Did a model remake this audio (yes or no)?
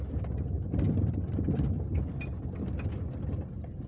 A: no